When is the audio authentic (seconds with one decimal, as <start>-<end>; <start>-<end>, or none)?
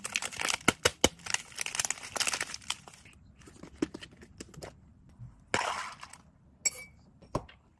0.0-7.8